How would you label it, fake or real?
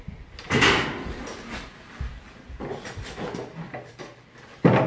real